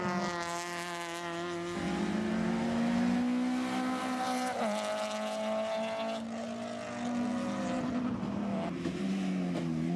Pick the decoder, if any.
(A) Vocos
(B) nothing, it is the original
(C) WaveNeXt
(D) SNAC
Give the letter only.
B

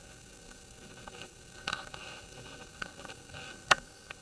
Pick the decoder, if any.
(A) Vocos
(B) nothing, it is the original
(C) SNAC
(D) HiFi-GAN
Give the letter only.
C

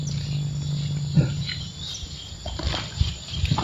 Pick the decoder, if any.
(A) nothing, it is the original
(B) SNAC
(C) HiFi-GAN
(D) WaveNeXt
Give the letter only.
A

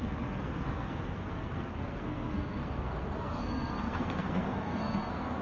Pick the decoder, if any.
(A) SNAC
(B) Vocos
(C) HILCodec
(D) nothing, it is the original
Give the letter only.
A